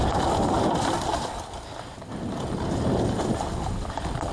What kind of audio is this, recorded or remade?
recorded